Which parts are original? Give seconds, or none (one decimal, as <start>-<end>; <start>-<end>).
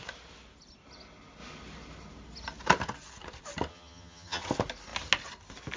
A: 0.0-3.7; 4.4-5.8